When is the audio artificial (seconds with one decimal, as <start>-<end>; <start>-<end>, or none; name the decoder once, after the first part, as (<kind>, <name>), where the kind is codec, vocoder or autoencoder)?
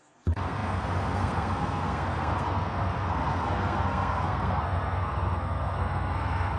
0.0-6.6 (codec, SNAC)